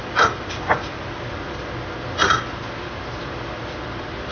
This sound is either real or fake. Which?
fake